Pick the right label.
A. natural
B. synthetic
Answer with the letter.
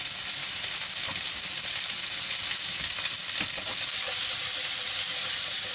A